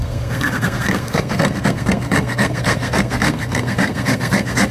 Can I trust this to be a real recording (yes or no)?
no